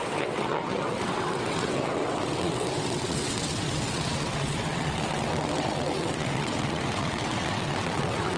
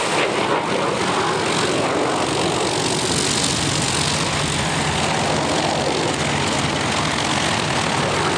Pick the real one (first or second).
second